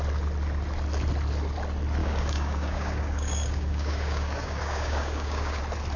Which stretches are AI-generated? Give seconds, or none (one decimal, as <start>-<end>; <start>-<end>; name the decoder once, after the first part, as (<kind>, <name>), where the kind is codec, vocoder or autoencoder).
2.0-5.6 (codec, DAC)